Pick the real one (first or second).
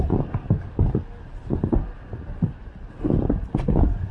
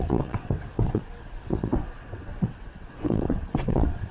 first